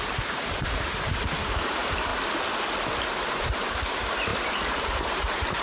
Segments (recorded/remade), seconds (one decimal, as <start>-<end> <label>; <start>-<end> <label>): 0.0-2.1 remade; 2.1-3.3 recorded; 3.3-5.6 remade